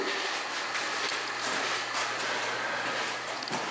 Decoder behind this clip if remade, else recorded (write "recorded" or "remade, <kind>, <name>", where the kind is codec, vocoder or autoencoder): recorded